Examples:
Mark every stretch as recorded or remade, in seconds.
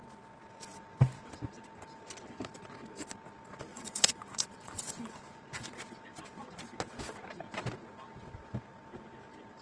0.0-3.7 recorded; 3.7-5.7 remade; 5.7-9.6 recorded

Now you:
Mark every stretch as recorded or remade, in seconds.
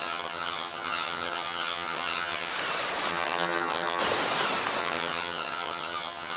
0.0-2.5 remade; 2.5-3.1 recorded; 3.1-4.0 remade; 4.0-4.8 recorded; 4.8-6.4 remade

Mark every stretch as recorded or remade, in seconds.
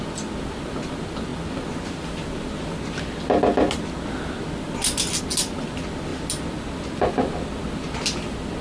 0.0-8.6 recorded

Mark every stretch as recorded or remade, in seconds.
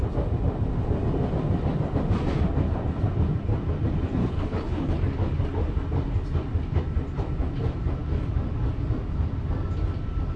0.0-4.2 recorded; 4.2-5.0 remade; 5.0-10.4 recorded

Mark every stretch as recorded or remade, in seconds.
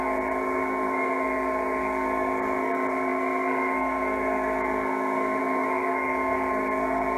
0.0-7.2 remade